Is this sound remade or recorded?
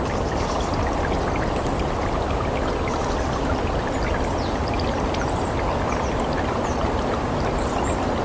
recorded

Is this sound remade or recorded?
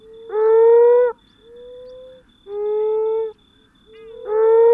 recorded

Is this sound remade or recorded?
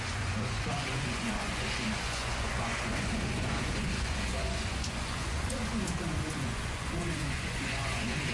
remade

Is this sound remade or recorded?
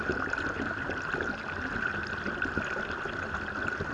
remade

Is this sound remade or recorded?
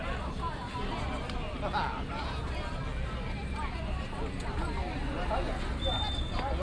recorded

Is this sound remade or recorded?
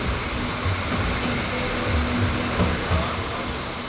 recorded